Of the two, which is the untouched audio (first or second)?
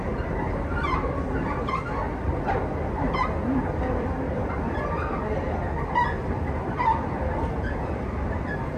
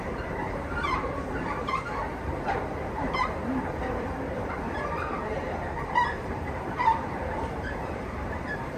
first